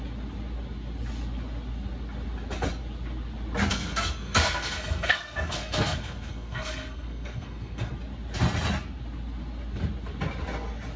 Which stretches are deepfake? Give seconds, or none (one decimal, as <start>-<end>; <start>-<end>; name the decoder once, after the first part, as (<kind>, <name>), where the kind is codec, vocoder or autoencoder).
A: 3.7-7.9 (codec, SNAC)